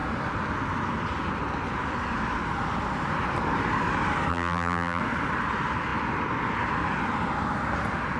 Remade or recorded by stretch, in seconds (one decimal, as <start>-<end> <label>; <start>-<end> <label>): 0.0-4.3 recorded; 4.3-5.0 remade; 5.0-8.2 recorded